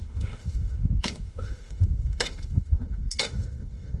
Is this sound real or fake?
fake